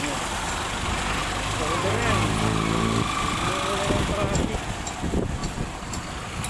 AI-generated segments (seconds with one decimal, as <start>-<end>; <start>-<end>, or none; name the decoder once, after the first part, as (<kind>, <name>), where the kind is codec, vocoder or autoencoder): 5.4-6.0 (vocoder, BigVGAN v2)